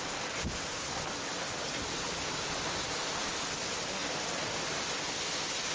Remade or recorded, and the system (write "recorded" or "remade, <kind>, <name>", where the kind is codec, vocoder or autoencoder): recorded